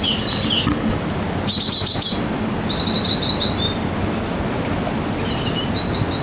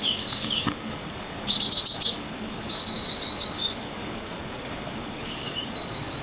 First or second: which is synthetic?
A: second